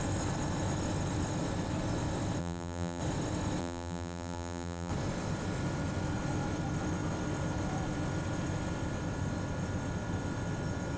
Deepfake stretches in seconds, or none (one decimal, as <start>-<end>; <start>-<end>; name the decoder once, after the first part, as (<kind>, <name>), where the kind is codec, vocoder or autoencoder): 2.4-3.0 (vocoder, BigVGAN v2); 3.6-4.9